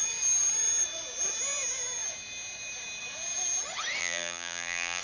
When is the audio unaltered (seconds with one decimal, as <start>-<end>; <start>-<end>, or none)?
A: 0.0-4.0